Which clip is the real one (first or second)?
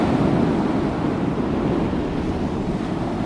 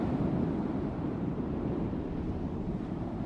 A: first